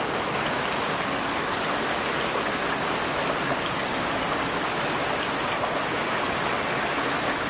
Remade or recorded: recorded